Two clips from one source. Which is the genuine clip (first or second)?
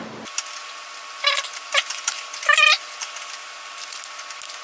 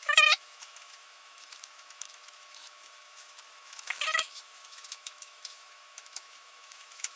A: first